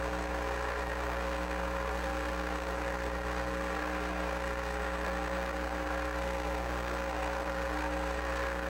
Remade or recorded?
remade